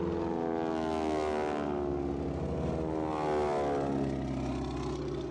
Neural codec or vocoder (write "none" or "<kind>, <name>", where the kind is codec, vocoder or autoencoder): none